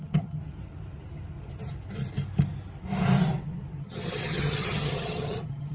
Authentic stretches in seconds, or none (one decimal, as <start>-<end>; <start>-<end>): 0.4-3.8